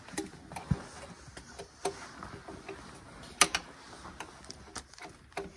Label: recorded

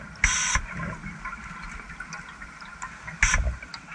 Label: recorded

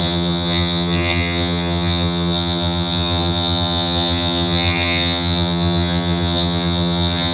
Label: remade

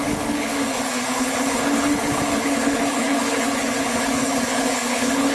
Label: remade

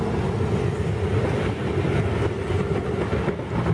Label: recorded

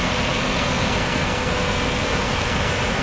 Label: remade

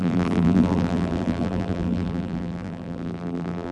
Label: remade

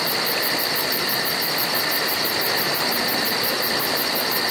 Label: recorded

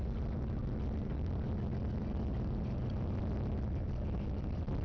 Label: recorded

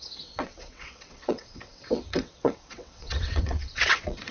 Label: remade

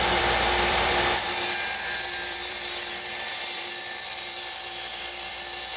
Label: remade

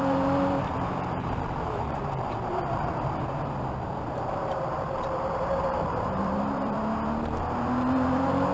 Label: remade